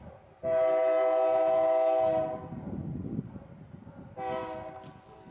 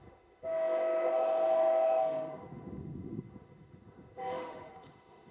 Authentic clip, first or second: first